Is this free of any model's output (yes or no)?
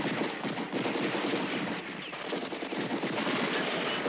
yes